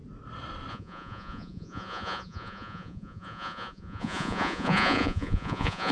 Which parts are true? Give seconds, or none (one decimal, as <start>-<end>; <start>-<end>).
0.0-0.7